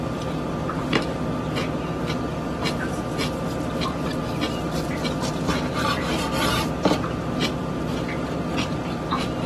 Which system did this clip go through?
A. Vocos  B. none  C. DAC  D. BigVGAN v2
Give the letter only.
B